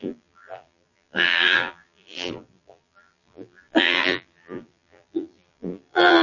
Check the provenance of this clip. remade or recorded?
remade